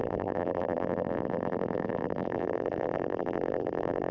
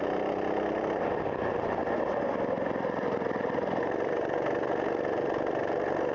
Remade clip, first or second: first